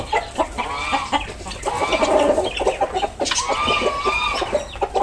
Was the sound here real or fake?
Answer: real